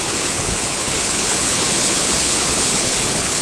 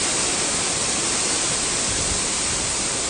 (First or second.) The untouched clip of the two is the second